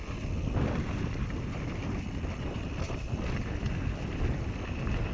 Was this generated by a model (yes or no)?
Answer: no